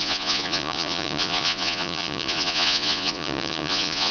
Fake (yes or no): yes